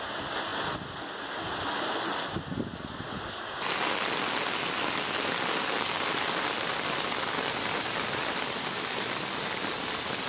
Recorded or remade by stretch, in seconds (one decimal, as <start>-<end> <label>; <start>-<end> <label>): 0.0-10.3 recorded